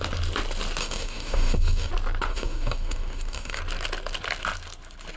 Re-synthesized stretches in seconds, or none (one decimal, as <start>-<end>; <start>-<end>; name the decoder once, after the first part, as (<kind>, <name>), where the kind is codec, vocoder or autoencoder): 0.8-1.9 (codec, DAC); 2.3-3.6